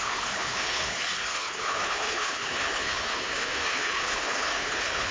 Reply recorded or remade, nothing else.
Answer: remade